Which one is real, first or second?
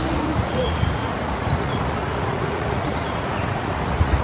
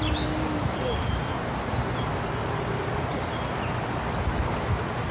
second